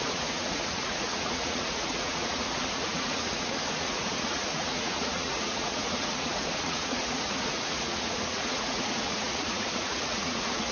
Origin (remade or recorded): remade